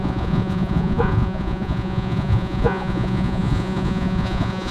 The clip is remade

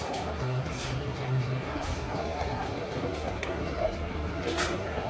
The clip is remade